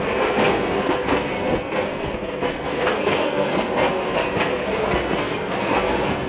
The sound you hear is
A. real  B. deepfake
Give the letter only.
B